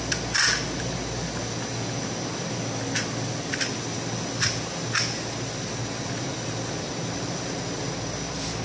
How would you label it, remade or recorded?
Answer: recorded